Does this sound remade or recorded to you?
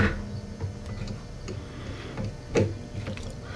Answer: recorded